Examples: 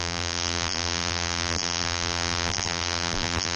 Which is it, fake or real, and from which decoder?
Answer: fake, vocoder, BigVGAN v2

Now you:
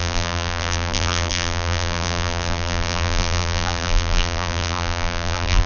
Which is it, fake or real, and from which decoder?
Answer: fake, vocoder, BigVGAN v2